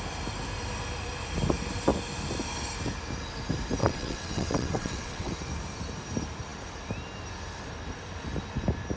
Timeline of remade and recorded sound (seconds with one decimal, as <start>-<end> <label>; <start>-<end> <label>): 0.0-3.8 recorded; 3.8-5.3 remade; 5.3-9.0 recorded

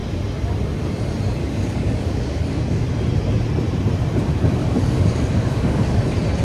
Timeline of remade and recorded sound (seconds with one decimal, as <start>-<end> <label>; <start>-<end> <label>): 0.0-1.4 recorded; 1.4-2.6 remade; 2.6-4.6 recorded; 4.6-6.0 remade; 6.0-6.4 recorded

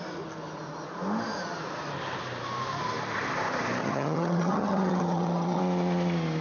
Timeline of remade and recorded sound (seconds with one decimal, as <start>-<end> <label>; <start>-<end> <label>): 0.0-3.8 recorded; 3.8-5.6 remade; 5.6-6.4 recorded

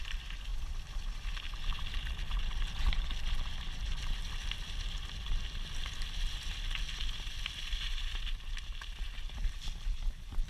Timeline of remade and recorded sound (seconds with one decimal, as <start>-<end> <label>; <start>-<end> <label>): 0.0-10.5 recorded

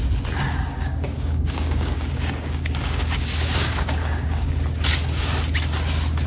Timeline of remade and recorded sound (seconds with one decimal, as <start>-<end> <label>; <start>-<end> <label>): 0.0-0.7 recorded; 0.7-4.5 remade; 4.5-6.3 recorded

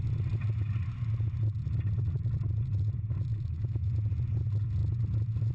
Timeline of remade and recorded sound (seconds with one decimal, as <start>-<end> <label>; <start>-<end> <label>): 0.0-3.3 recorded; 3.3-3.9 remade; 3.9-5.5 recorded

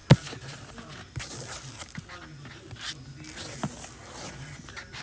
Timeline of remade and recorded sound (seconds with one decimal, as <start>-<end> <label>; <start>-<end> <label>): 0.0-5.0 recorded